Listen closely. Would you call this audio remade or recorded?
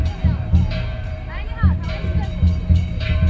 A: remade